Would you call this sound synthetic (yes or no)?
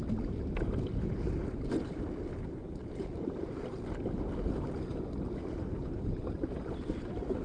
no